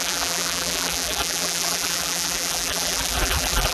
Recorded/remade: remade